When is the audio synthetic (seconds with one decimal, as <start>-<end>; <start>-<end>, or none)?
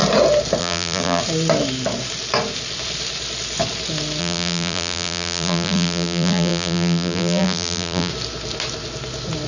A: 0.6-1.2; 4.2-8.1